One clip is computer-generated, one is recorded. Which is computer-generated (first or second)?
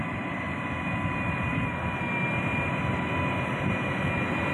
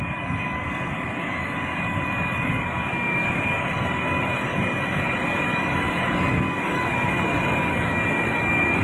second